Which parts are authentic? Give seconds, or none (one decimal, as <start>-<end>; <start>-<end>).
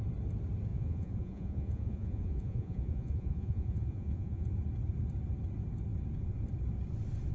0.0-0.7; 4.5-7.3